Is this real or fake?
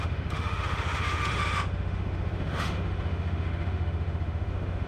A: fake